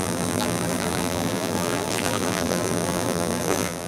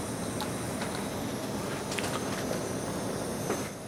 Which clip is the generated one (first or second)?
first